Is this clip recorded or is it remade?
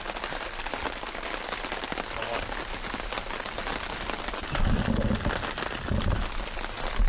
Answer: recorded